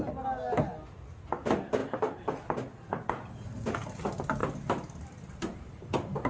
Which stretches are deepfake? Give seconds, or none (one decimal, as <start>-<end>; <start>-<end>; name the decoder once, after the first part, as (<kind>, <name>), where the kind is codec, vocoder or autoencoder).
none